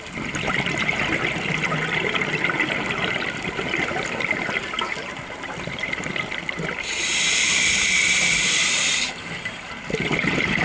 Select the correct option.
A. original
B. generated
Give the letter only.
A